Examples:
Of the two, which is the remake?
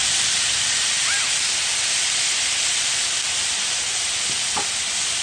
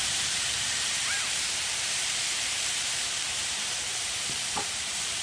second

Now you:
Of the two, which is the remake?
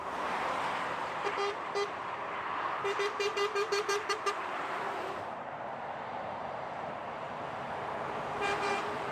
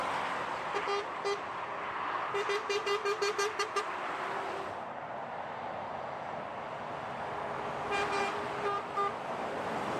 first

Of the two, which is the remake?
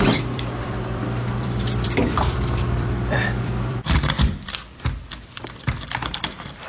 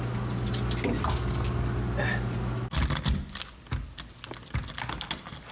first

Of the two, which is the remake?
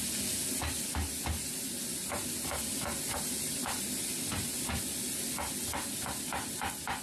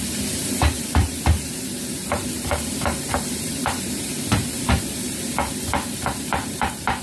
second